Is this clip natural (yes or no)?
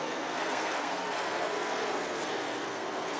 no